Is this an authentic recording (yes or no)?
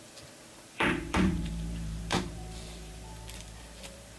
no